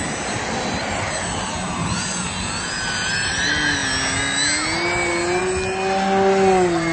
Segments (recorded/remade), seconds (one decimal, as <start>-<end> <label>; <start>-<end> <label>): 0.0-6.9 recorded